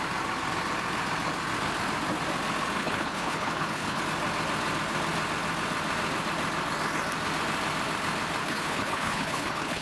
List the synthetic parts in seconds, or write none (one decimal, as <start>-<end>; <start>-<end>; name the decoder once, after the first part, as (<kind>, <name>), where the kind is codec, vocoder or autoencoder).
2.8-4.0 (codec, HILCodec); 8.4-9.8